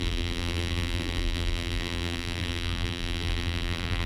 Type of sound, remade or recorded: remade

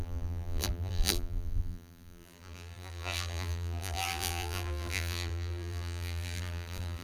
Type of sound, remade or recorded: remade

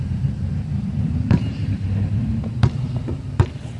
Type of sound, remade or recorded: remade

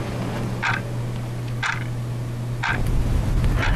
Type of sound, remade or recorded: recorded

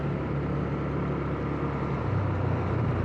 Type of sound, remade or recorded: recorded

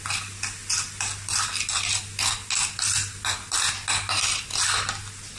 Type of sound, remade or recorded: recorded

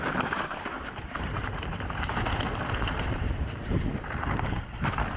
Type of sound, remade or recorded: remade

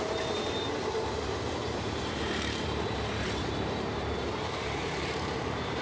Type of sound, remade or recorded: remade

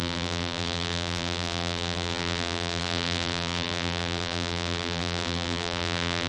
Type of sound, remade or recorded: remade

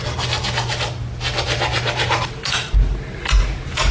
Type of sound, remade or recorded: recorded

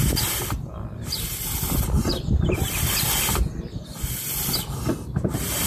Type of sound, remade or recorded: recorded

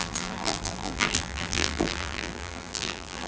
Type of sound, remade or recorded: remade